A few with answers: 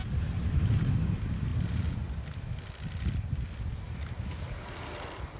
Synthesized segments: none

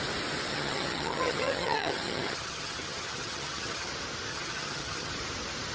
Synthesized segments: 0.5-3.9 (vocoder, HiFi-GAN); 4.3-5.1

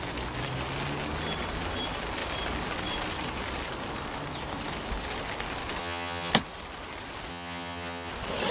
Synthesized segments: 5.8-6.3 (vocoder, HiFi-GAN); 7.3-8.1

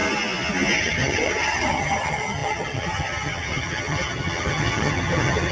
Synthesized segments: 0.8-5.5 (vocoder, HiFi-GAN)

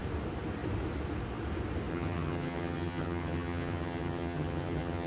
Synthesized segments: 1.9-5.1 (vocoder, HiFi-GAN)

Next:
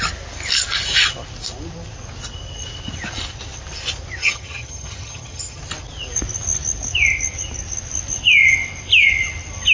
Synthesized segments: 4.2-5.6 (vocoder, HiFi-GAN)